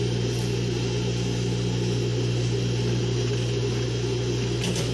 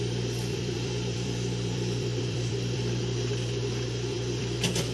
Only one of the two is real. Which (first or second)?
first